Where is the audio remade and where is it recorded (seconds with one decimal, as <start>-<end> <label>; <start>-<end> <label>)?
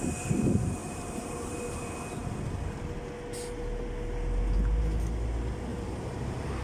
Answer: 0.0-0.8 recorded; 0.8-1.5 remade; 1.5-5.7 recorded; 5.7-6.6 remade